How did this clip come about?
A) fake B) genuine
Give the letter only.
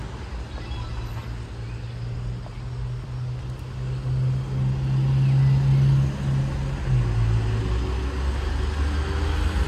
B